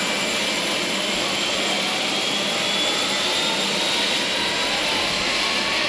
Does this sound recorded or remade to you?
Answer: recorded